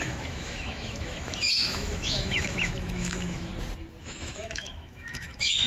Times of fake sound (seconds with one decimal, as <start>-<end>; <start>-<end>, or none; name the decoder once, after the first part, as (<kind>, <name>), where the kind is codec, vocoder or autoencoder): 0.0-3.5 (autoencoder, DAC-VAE); 4.0-5.7